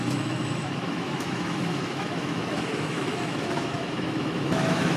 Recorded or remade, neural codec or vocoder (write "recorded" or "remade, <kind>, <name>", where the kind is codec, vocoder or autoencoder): remade, autoencoder, DAC-VAE